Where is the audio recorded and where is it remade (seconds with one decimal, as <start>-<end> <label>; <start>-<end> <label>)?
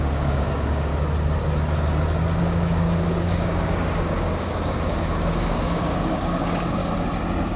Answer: 0.0-0.9 remade; 0.9-2.4 recorded; 2.4-6.8 remade; 6.8-7.6 recorded